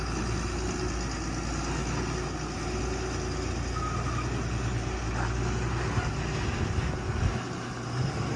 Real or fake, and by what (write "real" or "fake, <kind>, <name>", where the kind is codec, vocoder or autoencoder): real